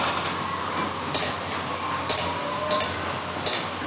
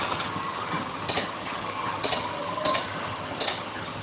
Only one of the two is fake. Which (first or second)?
second